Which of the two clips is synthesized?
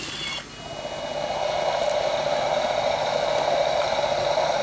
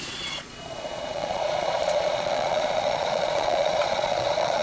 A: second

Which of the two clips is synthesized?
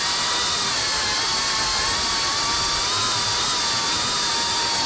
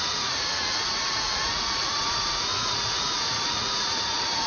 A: second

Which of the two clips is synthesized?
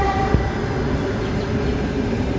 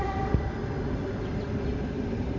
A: second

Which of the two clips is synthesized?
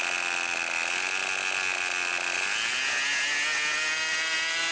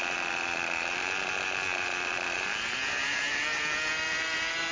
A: second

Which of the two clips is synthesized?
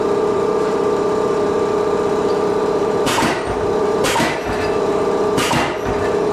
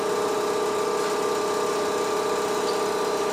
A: first